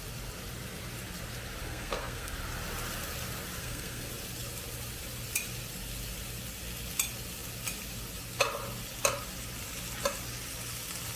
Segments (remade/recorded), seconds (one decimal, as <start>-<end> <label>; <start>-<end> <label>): 0.0-1.6 recorded; 1.6-2.3 remade; 2.3-3.6 recorded; 3.6-4.1 remade; 4.1-11.2 recorded